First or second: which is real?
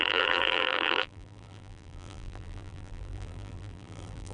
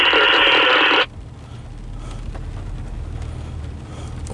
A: second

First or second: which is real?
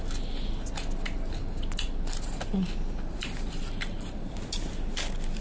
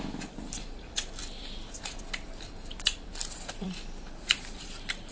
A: first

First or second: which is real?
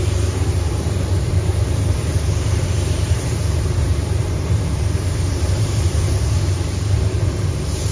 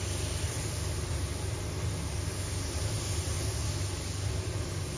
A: second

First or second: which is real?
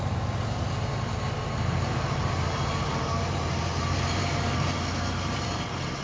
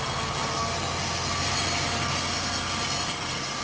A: second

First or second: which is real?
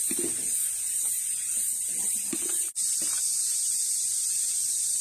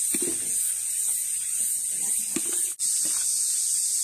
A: second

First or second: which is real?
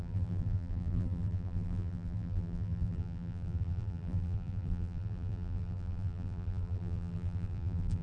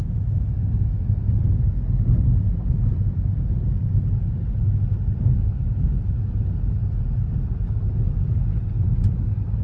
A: second